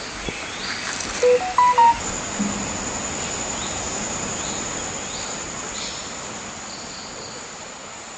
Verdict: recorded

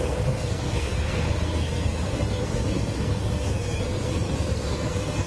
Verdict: remade